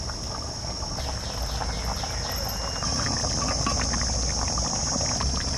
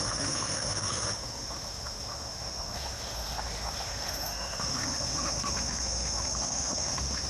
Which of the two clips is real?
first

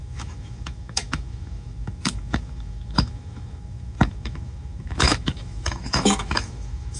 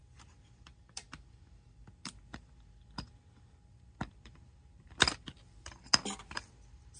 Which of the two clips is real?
second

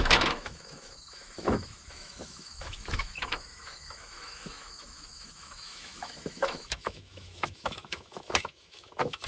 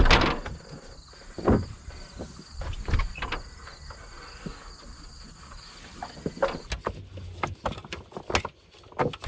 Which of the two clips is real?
second